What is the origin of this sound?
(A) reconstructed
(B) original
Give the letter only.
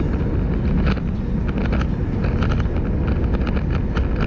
B